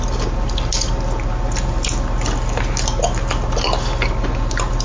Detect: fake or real real